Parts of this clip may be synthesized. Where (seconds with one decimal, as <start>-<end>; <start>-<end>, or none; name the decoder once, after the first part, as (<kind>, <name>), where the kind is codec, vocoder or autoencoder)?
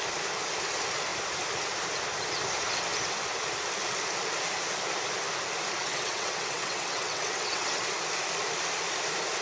5.8-7.8 (vocoder, WaveNeXt)